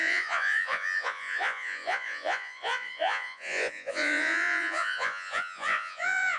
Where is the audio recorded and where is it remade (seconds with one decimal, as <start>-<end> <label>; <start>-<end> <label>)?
0.0-6.4 remade